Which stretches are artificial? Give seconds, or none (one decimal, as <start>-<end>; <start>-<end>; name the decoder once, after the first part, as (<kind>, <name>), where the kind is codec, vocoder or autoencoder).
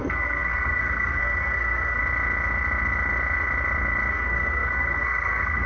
0.0-2.0 (codec, SNAC); 4.1-5.7